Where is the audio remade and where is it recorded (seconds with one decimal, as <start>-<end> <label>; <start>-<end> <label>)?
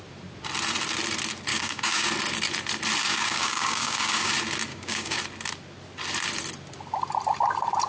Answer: 0.0-1.5 recorded; 1.5-2.1 remade; 2.1-3.1 recorded; 3.1-4.3 remade; 4.3-4.7 recorded; 4.7-5.2 remade; 5.2-7.9 recorded